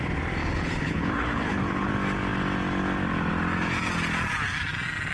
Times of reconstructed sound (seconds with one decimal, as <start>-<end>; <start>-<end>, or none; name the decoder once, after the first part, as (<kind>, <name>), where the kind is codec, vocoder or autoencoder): 0.4-1.9 (codec, HILCodec)